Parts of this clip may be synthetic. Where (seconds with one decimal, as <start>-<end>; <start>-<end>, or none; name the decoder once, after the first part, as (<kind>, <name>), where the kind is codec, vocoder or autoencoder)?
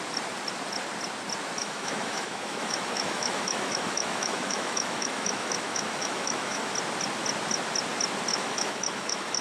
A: 1.6-6.7 (autoencoder, DAC-VAE); 8.3-9.4